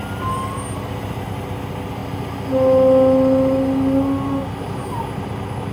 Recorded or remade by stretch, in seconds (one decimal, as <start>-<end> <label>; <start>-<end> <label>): 0.0-5.7 recorded